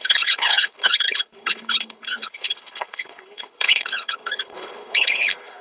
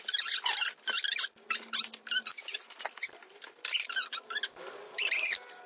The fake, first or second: first